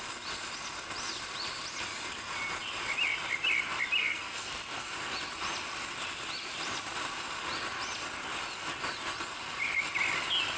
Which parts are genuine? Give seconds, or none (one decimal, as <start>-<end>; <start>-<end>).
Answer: 0.0-4.0; 4.9-10.6